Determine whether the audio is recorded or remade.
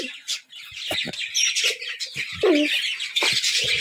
recorded